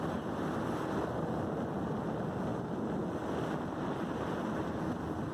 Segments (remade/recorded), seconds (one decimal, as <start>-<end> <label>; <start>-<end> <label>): 0.0-5.3 recorded